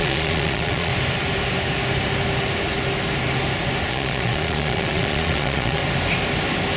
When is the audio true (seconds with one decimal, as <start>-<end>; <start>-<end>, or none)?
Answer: 0.9-3.9; 5.8-6.8